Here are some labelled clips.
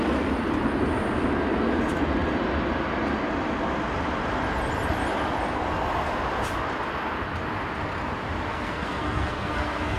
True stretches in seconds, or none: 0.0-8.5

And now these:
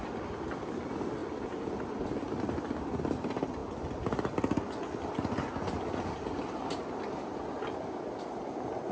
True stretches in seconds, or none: 0.0-8.9

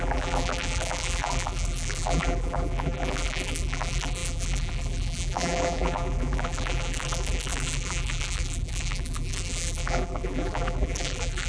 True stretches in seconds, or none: none

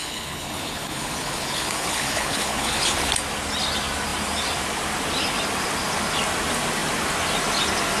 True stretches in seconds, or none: 3.1-8.0

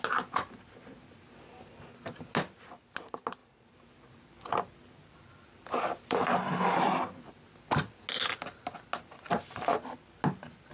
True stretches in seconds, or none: 0.0-3.4; 6.6-10.7

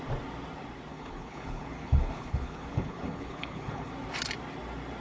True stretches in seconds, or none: 0.0-0.9; 3.9-5.0

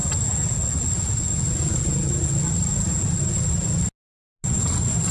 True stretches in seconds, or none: 0.0-5.1

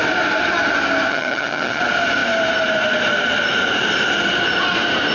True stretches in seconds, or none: 0.0-1.1; 1.8-5.1